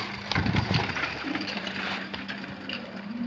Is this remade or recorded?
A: remade